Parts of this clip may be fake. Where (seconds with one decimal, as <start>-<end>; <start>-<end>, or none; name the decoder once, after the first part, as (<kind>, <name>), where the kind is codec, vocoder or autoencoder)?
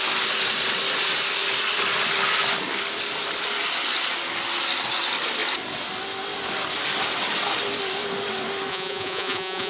8.7-9.7 (vocoder, Vocos)